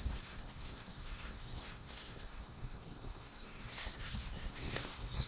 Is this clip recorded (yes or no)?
no